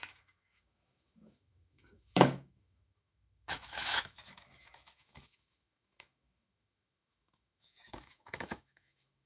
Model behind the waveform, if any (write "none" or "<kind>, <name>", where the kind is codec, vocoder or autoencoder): autoencoder, DAC-VAE